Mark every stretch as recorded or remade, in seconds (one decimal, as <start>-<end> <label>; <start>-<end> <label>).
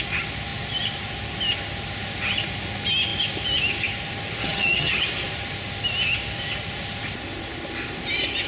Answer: 0.0-4.4 recorded; 4.4-4.9 remade; 4.9-8.5 recorded